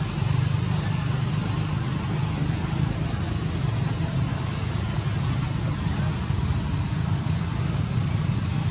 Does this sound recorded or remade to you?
recorded